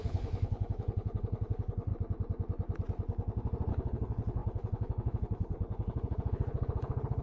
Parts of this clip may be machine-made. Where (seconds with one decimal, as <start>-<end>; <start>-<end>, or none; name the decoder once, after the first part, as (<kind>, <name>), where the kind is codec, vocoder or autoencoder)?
0.0-1.9 (codec, HILCodec); 3.7-7.2